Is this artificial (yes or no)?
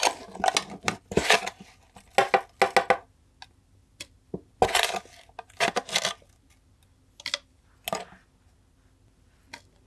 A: no